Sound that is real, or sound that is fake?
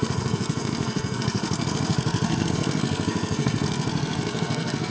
fake